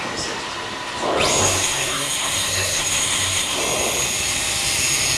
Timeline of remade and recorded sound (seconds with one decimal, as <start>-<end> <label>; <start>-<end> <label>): 0.0-1.4 recorded; 1.4-3.6 remade; 3.6-5.2 recorded